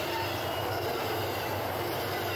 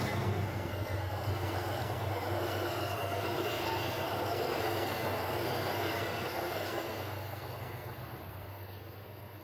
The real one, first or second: first